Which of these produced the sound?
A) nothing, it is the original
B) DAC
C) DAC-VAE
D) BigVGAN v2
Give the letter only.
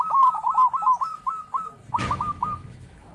C